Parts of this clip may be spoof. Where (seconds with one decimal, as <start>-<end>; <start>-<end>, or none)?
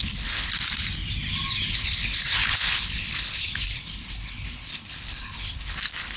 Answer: 0.0-0.5; 1.7-6.2